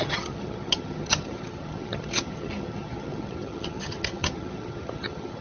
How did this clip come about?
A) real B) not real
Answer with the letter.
B